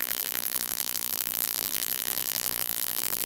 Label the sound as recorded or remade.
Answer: remade